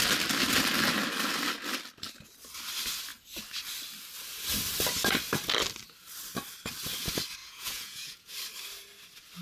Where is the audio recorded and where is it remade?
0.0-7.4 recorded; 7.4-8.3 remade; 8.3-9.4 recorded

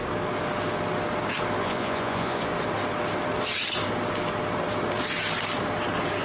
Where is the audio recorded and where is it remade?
0.0-1.6 recorded; 1.6-2.5 remade; 2.5-6.2 recorded

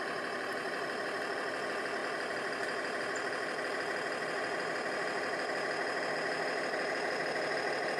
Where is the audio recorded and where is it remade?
0.0-8.0 recorded

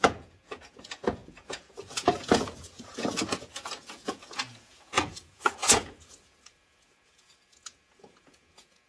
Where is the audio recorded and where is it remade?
0.0-8.9 remade

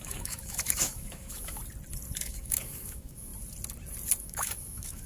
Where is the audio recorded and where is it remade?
0.0-1.6 remade; 1.6-2.2 recorded; 2.2-3.3 remade; 3.3-4.2 recorded; 4.2-5.1 remade

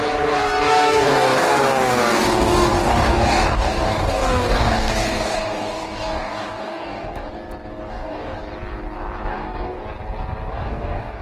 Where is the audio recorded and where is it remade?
0.0-7.3 remade; 7.3-7.9 recorded; 7.9-8.4 remade; 8.4-9.3 recorded; 9.3-9.8 remade; 9.8-10.5 recorded; 10.5-11.2 remade